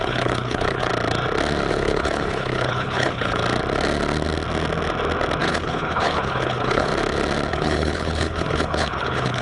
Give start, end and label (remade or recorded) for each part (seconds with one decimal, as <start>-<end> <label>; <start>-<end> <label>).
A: 0.0-0.9 remade; 0.9-1.7 recorded; 1.7-3.4 remade; 3.4-5.4 recorded; 5.4-6.9 remade; 6.9-7.5 recorded; 7.5-9.4 remade